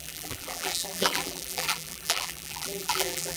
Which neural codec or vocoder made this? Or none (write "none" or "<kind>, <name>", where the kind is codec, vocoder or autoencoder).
vocoder, BigVGAN v2